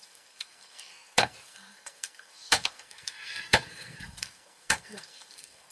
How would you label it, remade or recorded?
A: remade